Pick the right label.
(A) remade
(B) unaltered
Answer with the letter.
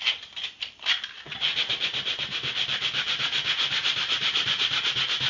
B